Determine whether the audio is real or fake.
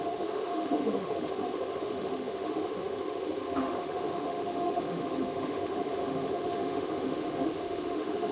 fake